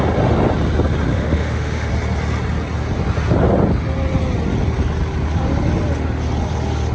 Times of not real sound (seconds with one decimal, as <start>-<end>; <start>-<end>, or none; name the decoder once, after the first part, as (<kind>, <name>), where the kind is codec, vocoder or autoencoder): 1.1-1.9 (autoencoder, DAC-VAE)